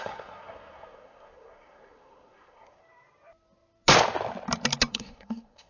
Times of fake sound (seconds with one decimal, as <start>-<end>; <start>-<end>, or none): 0.0-2.8; 4.9-5.7